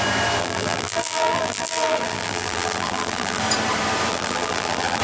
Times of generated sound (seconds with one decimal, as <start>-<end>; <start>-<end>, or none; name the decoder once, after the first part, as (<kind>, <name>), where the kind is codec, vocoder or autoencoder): 0.4-3.4 (vocoder, BigVGAN v2); 4.1-5.0